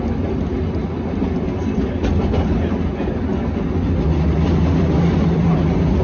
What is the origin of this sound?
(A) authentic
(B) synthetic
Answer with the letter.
A